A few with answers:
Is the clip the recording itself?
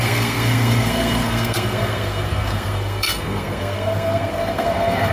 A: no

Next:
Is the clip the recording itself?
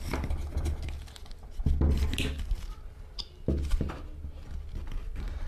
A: yes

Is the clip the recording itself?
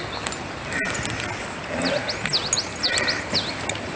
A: yes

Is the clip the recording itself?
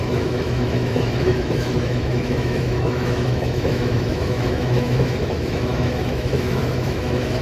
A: no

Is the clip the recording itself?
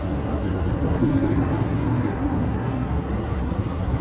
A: no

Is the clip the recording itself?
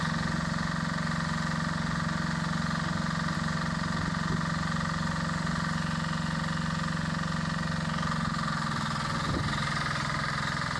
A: yes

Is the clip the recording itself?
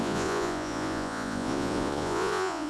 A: no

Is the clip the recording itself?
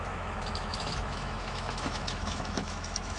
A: no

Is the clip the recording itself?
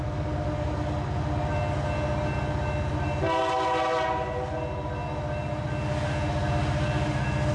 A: yes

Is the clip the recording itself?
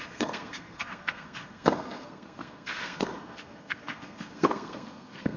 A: no